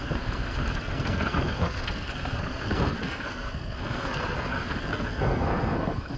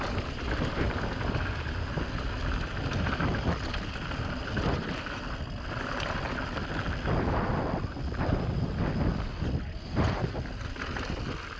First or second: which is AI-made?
first